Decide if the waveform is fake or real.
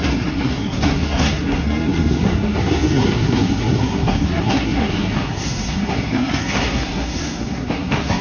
fake